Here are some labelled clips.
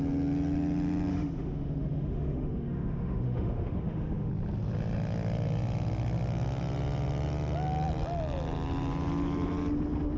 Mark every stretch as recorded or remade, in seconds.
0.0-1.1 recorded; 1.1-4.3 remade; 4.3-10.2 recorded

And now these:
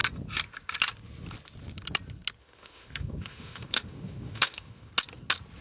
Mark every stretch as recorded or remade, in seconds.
0.0-2.4 recorded; 2.4-4.9 remade; 4.9-5.6 recorded

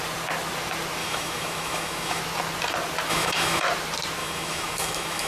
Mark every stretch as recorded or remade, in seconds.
0.0-1.0 recorded; 1.0-2.2 remade; 2.2-3.1 recorded; 3.1-3.6 remade; 3.6-4.2 recorded; 4.2-5.3 remade

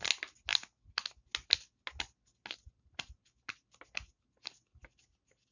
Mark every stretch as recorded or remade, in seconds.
0.0-5.5 recorded

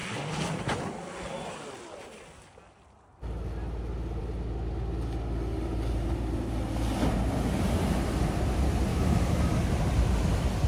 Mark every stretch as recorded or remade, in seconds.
0.0-8.9 recorded; 8.9-9.4 remade; 9.4-10.7 recorded

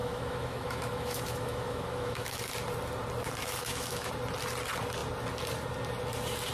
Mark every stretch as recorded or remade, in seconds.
0.0-2.5 remade; 2.5-3.4 recorded; 3.4-4.1 remade; 4.1-6.5 recorded